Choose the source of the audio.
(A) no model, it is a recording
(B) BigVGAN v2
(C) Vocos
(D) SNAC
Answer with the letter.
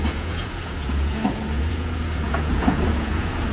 C